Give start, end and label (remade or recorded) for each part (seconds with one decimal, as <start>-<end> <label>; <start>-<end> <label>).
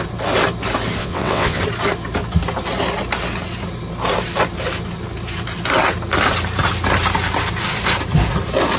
0.0-1.0 recorded; 1.0-1.6 remade; 1.6-8.8 recorded